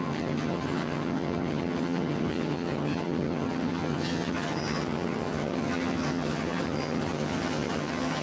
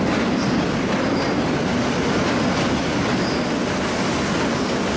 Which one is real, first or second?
second